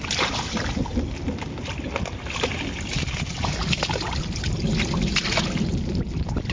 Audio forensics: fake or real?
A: real